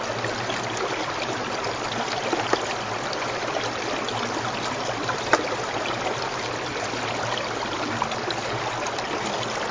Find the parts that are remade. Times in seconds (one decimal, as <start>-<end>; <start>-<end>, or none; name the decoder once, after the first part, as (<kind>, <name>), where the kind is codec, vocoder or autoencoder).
none